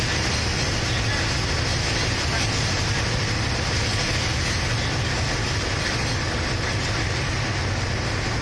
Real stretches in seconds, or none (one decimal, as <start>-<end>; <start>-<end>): 0.0-1.7; 2.6-8.4